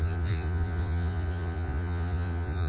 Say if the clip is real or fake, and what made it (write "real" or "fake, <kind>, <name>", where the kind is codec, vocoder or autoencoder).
fake, vocoder, Vocos